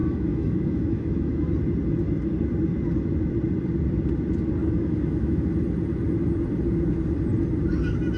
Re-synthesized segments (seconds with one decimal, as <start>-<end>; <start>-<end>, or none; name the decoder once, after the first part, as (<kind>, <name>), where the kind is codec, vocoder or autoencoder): 0.0-1.5 (autoencoder, DAC-VAE); 4.6-5.5